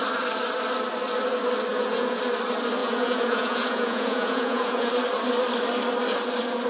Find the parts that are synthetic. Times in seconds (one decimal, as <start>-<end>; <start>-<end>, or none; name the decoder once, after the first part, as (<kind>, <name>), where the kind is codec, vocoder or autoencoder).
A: 1.7-2.2 (vocoder, Vocos); 2.8-4.9